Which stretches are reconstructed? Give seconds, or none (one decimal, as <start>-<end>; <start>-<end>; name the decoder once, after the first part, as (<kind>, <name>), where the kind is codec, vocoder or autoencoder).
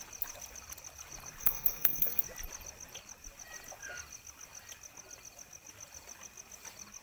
1.4-2.2 (codec, SNAC)